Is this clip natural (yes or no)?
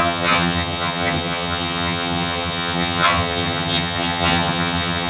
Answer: no